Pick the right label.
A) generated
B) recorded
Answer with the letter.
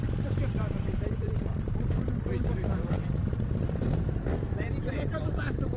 A